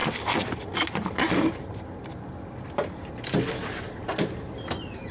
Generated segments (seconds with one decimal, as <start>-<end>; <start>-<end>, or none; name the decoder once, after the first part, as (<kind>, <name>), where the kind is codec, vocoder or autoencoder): none